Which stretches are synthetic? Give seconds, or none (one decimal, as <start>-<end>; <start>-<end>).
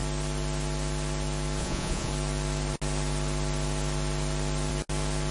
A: 1.6-2.1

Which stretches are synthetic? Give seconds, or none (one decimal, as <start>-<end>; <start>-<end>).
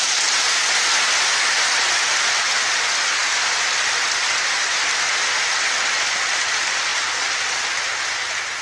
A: 3.2-6.4; 6.9-7.7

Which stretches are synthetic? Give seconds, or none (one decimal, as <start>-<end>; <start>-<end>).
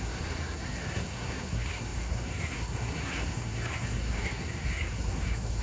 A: 0.0-5.6